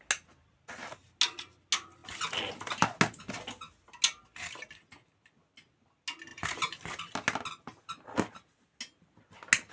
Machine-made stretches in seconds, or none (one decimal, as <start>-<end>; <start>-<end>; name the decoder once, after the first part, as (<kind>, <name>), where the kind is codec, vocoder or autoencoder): none